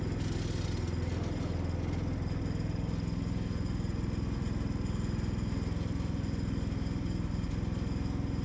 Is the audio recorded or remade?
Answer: recorded